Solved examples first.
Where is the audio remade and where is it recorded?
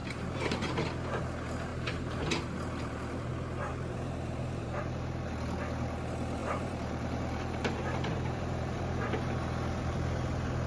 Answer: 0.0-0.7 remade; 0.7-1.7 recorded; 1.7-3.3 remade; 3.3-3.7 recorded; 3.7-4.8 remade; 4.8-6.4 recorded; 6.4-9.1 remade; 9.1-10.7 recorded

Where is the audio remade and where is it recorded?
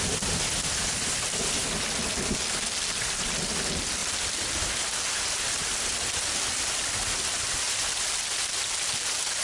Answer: 0.0-9.4 recorded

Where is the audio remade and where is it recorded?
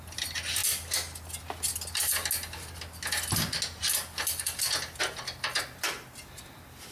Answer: 0.0-6.9 recorded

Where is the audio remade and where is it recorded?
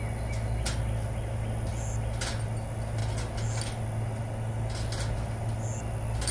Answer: 0.0-6.3 recorded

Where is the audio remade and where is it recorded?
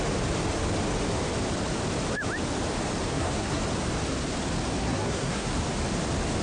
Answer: 0.0-3.1 recorded; 3.1-3.6 remade; 3.6-4.8 recorded; 4.8-5.6 remade; 5.6-6.4 recorded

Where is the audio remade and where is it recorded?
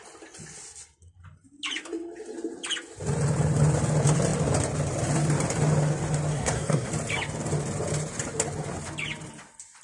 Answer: 0.0-6.3 recorded; 6.3-6.9 remade; 6.9-9.8 recorded